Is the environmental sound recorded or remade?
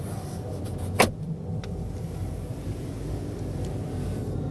recorded